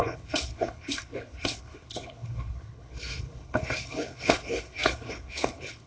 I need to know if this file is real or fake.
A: fake